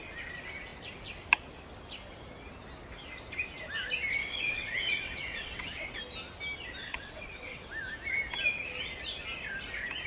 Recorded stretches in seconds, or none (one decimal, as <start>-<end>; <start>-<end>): 0.0-4.2; 6.0-6.8; 7.7-10.1